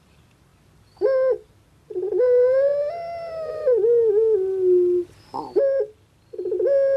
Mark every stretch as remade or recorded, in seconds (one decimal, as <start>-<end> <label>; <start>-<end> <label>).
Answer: 0.0-0.5 remade; 0.5-2.2 recorded; 2.2-2.7 remade; 2.7-7.0 recorded

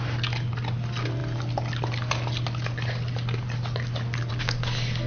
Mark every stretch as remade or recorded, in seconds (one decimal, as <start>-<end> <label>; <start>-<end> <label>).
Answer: 0.0-5.1 recorded

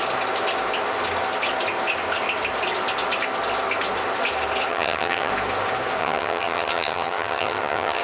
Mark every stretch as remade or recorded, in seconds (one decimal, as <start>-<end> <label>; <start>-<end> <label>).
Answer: 0.0-4.7 recorded; 4.7-5.3 remade; 5.3-6.0 recorded; 6.0-8.0 remade

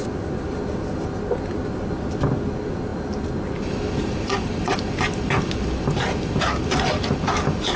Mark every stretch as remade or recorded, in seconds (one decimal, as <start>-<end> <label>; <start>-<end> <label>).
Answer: 0.0-7.8 recorded

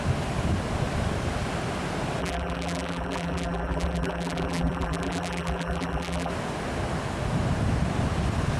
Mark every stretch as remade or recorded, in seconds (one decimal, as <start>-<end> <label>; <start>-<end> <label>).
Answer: 0.0-2.2 recorded; 2.2-6.3 remade; 6.3-8.6 recorded

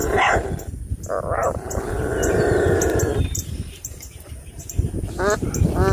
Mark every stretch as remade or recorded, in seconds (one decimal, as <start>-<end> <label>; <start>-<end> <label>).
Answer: 0.0-0.5 remade; 0.5-1.4 recorded; 1.4-4.9 remade; 4.9-5.9 recorded

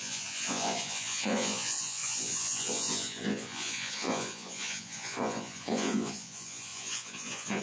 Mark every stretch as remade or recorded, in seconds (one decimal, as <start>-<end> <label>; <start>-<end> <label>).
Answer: 0.0-7.6 remade